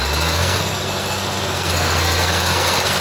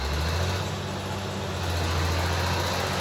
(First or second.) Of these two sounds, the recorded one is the second